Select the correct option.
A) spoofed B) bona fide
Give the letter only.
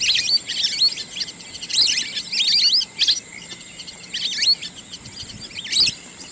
B